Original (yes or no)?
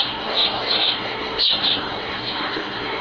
no